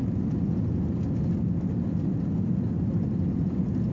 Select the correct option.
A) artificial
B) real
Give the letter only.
B